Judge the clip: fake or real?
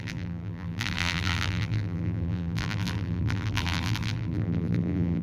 fake